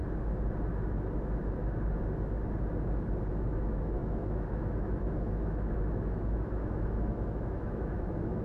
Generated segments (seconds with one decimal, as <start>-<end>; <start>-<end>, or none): 3.3-8.4